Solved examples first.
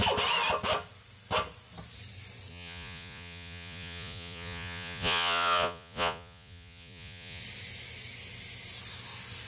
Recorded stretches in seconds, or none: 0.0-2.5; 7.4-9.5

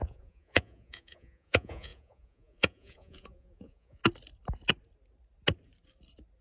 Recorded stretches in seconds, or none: 4.0-6.4